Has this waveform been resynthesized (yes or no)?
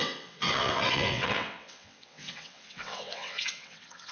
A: yes